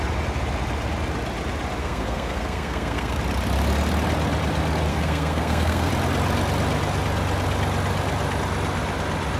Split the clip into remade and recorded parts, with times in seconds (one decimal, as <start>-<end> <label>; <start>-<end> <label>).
0.0-1.8 recorded; 1.8-3.2 remade; 3.2-4.9 recorded; 4.9-5.9 remade; 5.9-9.4 recorded